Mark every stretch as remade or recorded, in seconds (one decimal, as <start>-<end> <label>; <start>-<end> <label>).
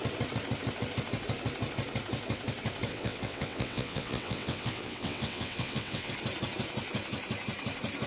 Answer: 0.0-2.9 recorded; 2.9-6.1 remade; 6.1-8.1 recorded